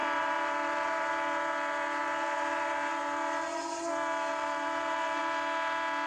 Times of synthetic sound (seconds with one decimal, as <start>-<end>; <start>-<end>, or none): 0.0-1.1; 4.3-5.2